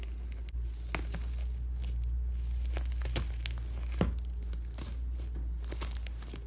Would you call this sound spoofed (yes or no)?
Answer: no